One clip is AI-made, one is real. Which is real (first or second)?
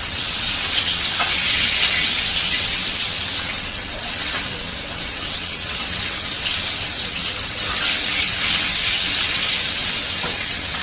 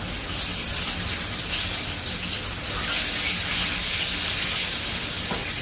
second